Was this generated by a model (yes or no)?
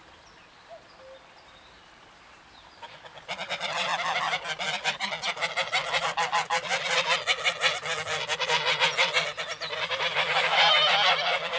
no